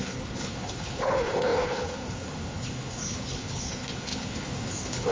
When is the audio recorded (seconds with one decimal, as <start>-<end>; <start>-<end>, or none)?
none